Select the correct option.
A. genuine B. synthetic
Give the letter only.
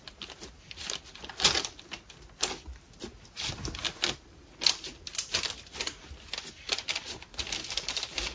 A